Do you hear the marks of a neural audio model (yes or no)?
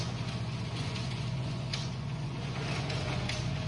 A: yes